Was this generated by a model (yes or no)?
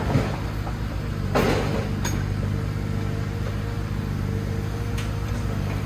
no